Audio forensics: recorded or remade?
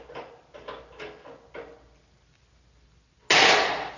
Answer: recorded